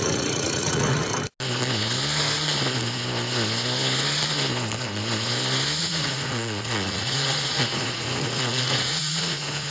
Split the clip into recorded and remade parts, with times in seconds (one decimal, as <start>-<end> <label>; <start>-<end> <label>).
0.0-1.1 remade; 1.1-5.8 recorded; 5.8-9.7 remade